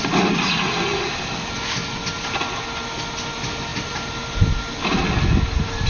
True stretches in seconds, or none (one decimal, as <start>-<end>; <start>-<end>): 0.0-3.7; 4.6-5.9